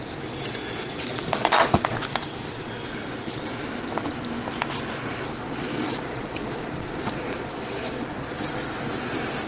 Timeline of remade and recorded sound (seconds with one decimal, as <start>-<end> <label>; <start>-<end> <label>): 0.0-0.6 recorded; 0.6-1.9 remade; 1.9-5.4 recorded; 5.4-8.5 remade; 8.5-9.5 recorded

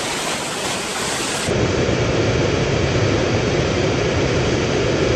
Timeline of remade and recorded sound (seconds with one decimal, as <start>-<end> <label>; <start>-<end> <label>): 0.0-5.2 recorded

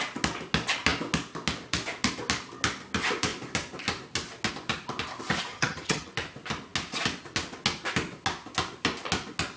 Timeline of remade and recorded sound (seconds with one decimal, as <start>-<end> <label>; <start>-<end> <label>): 0.0-5.5 recorded; 5.5-6.1 remade; 6.1-9.6 recorded

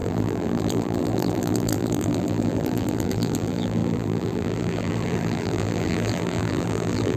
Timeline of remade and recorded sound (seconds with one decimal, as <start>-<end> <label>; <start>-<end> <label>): 0.0-7.2 remade

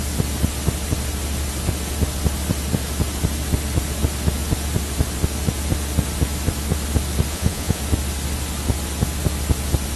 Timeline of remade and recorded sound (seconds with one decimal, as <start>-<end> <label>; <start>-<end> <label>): 0.0-7.3 recorded; 7.3-7.8 remade; 7.8-10.0 recorded